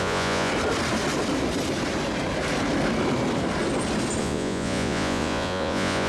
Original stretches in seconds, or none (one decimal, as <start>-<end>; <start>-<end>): 0.5-4.2